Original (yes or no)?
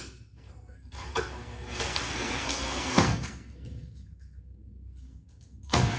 no